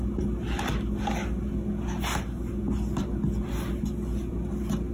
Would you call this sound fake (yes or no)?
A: no